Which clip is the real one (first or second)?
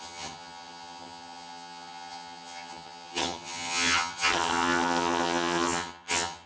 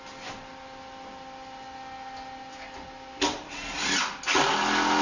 second